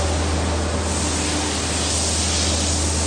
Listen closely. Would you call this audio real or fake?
real